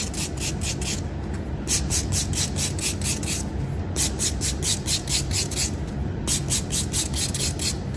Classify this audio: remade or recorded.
recorded